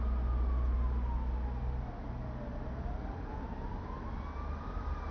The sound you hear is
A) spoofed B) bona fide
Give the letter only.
B